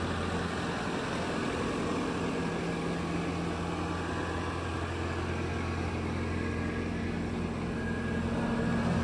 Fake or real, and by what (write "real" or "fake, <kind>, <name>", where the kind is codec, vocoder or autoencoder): real